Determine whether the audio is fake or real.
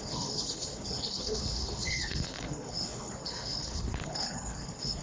fake